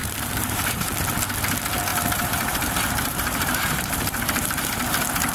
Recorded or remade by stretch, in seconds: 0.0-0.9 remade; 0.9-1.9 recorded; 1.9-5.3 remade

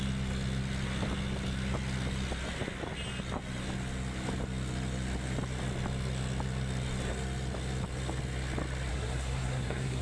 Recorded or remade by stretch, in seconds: 0.0-8.9 recorded; 8.9-10.0 remade

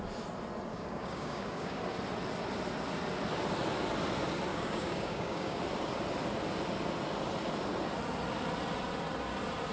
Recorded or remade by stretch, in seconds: 0.0-0.7 recorded; 0.7-1.8 remade; 1.8-4.5 recorded; 4.5-5.6 remade; 5.6-9.7 recorded

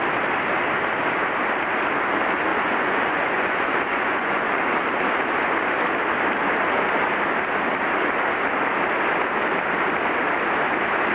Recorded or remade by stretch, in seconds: 0.0-2.5 recorded; 2.5-4.6 remade; 4.6-11.1 recorded

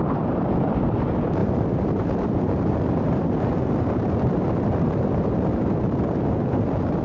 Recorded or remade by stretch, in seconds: 0.0-1.4 recorded; 1.4-5.6 remade; 5.6-7.0 recorded

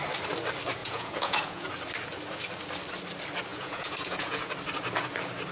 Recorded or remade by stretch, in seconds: 0.0-0.8 recorded; 0.8-1.7 remade; 1.7-3.5 recorded; 3.5-4.5 remade; 4.5-5.5 recorded

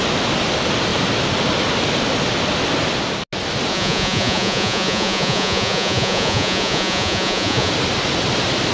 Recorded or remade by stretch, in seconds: 0.0-3.7 recorded; 3.7-7.7 remade; 7.7-8.7 recorded

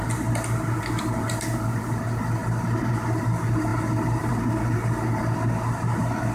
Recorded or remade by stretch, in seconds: 0.0-6.3 recorded